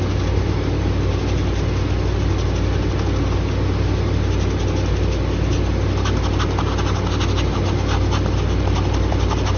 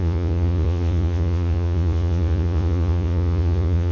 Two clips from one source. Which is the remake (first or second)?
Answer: second